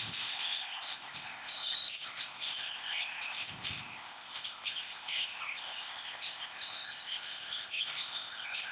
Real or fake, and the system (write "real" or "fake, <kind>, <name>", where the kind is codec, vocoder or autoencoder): fake, codec, ZipCodec